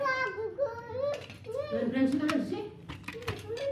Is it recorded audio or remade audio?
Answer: recorded